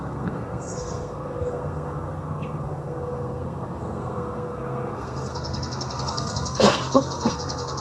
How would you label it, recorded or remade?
remade